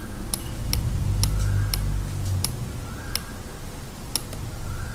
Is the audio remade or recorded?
recorded